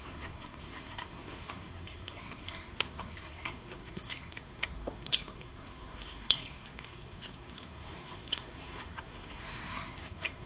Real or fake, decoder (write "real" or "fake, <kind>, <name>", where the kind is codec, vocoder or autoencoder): fake, codec, SNAC